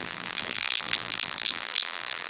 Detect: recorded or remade remade